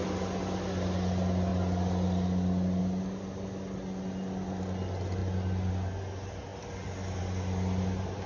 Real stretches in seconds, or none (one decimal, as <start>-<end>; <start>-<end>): 0.0-8.3